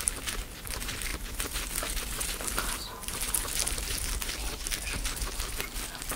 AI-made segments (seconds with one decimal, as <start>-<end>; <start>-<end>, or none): 1.1-3.2